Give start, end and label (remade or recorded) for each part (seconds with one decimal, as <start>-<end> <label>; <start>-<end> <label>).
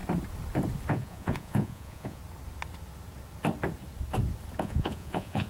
0.0-0.9 recorded; 0.9-2.2 remade; 2.2-4.6 recorded; 4.6-5.5 remade